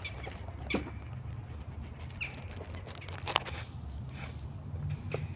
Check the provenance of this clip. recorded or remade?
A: recorded